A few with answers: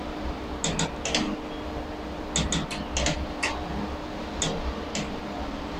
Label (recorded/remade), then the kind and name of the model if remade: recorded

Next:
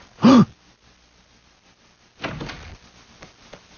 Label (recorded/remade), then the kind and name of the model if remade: recorded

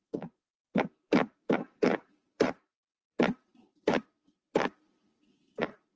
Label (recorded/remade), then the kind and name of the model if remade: remade, vocoder, BigVGAN v2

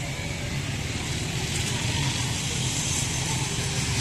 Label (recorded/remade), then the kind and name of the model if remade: recorded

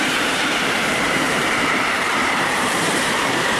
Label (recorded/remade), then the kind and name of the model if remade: remade, vocoder, BigVGAN v2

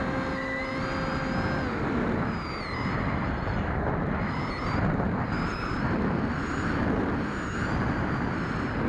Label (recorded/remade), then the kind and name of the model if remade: recorded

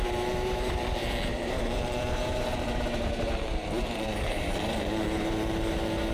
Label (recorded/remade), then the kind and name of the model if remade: remade, vocoder, BigVGAN v2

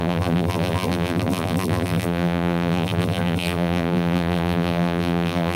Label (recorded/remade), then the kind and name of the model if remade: remade, vocoder, BigVGAN v2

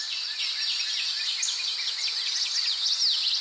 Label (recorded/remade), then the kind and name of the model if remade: recorded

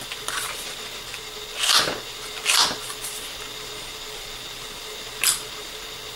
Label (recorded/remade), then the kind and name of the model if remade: remade, vocoder, BigVGAN v2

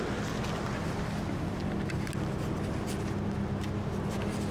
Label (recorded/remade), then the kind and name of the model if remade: recorded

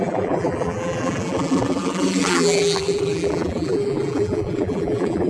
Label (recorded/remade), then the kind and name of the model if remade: remade, vocoder, BigVGAN v2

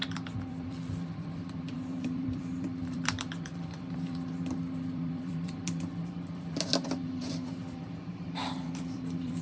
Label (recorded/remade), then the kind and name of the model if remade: remade, vocoder, BigVGAN v2